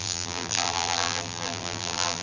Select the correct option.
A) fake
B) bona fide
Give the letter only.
A